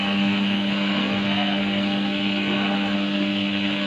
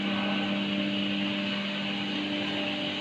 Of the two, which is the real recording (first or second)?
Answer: second